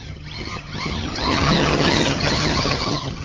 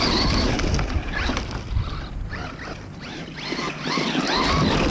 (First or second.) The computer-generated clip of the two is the first